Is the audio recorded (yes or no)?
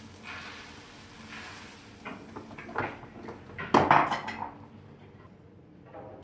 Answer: yes